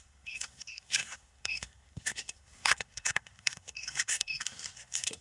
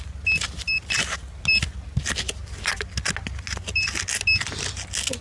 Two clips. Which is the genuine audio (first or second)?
second